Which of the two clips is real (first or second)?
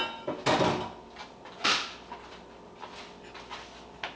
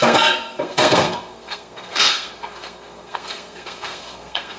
first